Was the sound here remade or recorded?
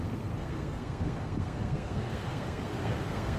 remade